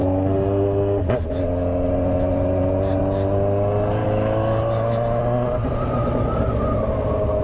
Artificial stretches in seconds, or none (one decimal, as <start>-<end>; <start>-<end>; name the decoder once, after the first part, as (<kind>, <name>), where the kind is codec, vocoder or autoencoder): 4.0-5.2 (autoencoder, DAC-VAE)